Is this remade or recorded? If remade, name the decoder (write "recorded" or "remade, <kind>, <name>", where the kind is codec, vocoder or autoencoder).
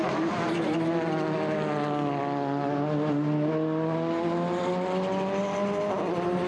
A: recorded